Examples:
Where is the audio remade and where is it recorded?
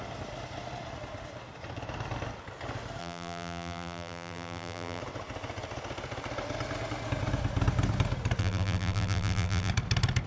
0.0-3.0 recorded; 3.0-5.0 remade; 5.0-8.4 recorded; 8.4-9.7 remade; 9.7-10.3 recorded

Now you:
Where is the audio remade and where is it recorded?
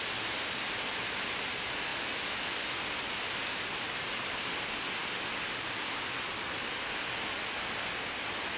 0.0-8.6 recorded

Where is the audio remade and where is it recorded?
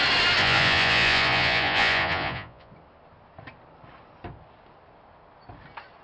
0.0-0.4 recorded; 0.4-2.7 remade; 2.7-6.0 recorded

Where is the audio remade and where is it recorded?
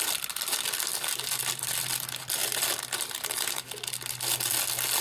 0.0-5.0 recorded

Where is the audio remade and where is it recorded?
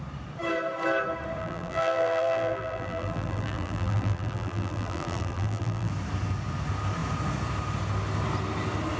0.0-1.4 recorded; 1.4-5.9 remade; 5.9-9.0 recorded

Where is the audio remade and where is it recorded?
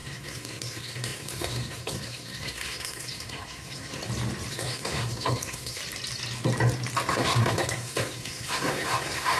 0.0-4.0 remade; 4.0-4.5 recorded; 4.5-5.8 remade; 5.8-7.1 recorded; 7.1-9.4 remade